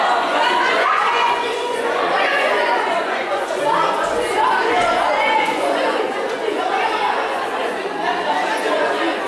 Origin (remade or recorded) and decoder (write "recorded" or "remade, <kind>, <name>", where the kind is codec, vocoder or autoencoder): remade, vocoder, Vocos